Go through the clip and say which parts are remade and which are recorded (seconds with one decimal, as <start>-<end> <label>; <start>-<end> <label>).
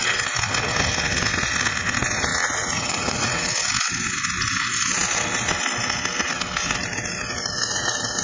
0.0-2.3 recorded; 2.3-3.5 remade; 3.5-8.2 recorded